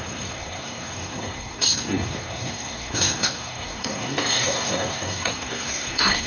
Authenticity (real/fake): fake